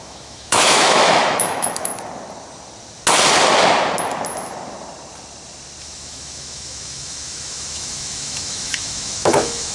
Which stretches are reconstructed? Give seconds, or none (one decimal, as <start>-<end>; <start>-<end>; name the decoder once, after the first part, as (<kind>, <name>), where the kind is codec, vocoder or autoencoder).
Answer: 0.0-1.9 (autoencoder, DAC-VAE); 5.8-9.7